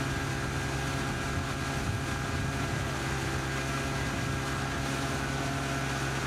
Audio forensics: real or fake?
real